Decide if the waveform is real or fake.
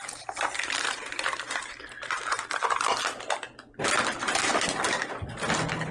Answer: real